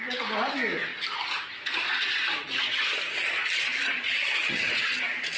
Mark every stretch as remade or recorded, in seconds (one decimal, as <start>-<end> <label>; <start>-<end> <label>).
0.0-4.2 recorded; 4.2-4.7 remade; 4.7-5.4 recorded